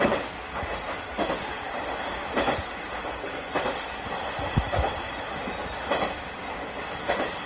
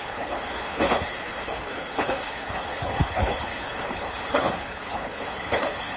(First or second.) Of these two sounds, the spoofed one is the second